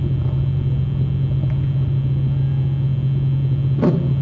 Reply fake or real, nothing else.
real